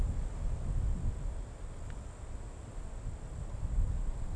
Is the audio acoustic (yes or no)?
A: yes